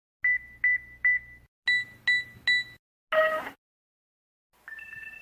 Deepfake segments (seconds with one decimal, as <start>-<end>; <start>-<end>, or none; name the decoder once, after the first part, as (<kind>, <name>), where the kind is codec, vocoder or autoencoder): none